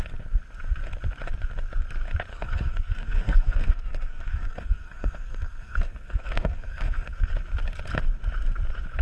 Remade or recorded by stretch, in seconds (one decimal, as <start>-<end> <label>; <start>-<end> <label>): 0.0-2.3 recorded; 2.3-7.3 remade; 7.3-9.0 recorded